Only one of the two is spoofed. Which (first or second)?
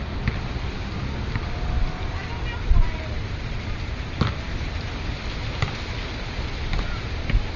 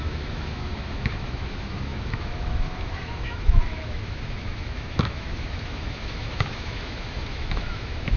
second